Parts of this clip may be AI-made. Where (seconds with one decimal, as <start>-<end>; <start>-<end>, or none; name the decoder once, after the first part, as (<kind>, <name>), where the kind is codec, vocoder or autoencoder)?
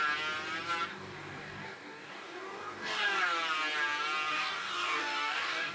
0.9-3.2 (codec, DAC); 4.3-5.7